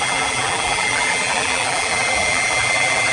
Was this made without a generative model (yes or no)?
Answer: no